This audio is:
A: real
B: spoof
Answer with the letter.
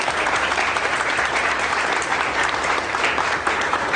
B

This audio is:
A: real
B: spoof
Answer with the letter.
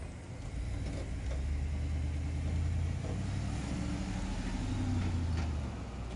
A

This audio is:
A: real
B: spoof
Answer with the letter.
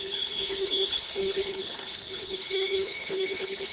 B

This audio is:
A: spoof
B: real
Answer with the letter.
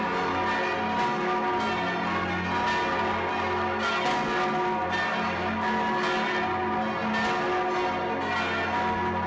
B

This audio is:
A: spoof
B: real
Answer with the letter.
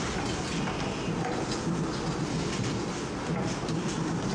B